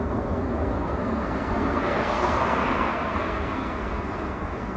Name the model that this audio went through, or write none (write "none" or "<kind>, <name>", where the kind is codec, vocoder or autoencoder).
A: codec, SNAC